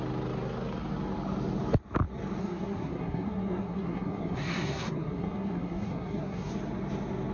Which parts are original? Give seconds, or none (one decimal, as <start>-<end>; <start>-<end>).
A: 0.0-2.4; 6.5-7.3